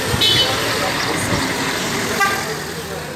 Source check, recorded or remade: recorded